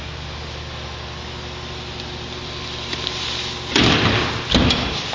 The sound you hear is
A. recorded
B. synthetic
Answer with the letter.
A